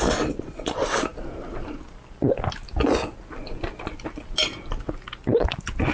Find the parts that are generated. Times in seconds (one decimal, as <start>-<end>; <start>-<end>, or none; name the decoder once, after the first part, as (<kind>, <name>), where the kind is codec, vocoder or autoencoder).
none